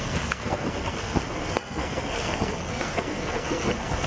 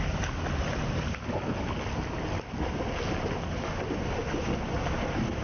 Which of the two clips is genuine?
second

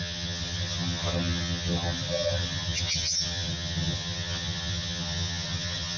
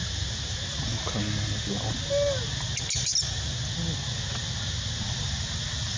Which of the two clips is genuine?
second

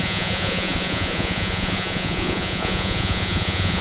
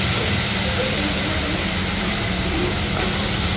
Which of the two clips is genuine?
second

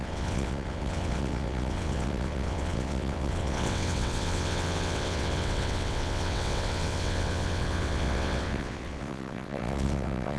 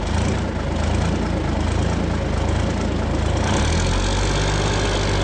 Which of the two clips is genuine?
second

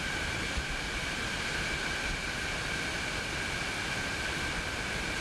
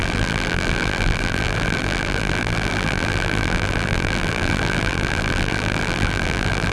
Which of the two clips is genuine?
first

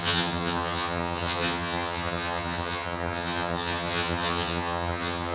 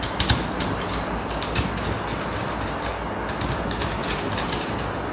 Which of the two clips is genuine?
second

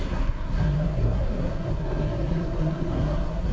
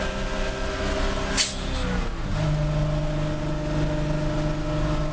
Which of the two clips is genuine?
second